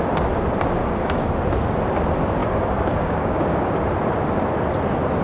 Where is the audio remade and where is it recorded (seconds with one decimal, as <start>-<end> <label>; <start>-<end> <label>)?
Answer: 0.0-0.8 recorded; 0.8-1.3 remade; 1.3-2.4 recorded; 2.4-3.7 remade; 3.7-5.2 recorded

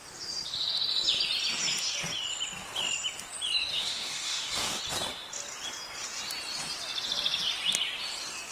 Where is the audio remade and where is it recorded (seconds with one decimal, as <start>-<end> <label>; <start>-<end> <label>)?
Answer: 0.0-3.7 recorded; 3.7-4.8 remade; 4.8-8.5 recorded

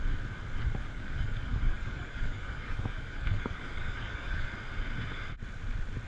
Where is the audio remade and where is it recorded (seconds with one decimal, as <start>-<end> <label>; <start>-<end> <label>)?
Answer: 0.0-0.8 recorded; 0.8-4.5 remade; 4.5-6.1 recorded

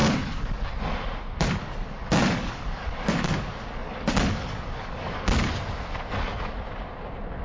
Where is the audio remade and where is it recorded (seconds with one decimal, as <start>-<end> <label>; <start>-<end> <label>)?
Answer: 0.0-0.7 remade; 0.7-1.6 recorded; 1.6-5.5 remade; 5.5-7.4 recorded

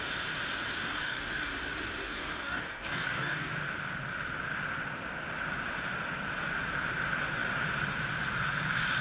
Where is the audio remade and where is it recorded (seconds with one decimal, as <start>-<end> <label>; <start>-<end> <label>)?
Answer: 0.0-0.8 recorded; 0.8-1.5 remade; 1.5-2.0 recorded; 2.0-3.5 remade; 3.5-9.0 recorded